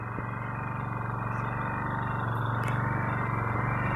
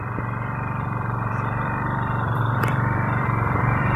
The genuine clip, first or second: first